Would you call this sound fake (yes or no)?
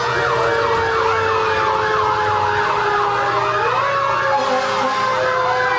no